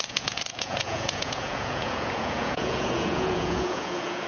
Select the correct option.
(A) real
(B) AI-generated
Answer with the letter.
B